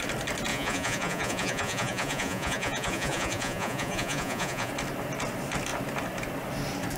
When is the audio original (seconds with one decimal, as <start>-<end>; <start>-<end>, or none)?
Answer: 0.0-0.5; 4.7-7.0

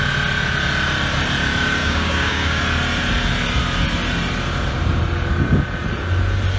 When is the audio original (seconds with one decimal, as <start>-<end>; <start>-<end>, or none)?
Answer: 0.0-1.8; 2.6-6.6

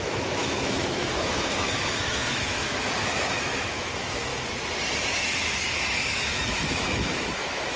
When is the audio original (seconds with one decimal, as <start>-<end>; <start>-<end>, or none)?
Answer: 4.3-5.8

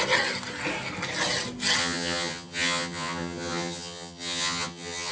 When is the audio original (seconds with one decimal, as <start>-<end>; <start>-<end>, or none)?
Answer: 0.0-1.8

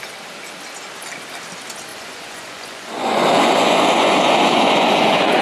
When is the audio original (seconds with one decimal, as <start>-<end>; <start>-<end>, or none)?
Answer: 0.0-1.9

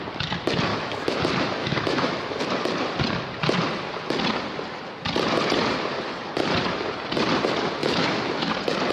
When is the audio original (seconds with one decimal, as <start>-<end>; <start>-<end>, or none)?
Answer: 0.0-0.7; 1.2-1.6; 2.4-7.8; 8.5-8.9